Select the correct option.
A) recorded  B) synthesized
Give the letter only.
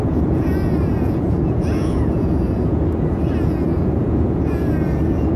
B